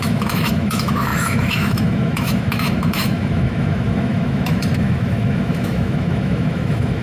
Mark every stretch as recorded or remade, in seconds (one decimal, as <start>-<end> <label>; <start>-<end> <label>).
0.0-7.0 remade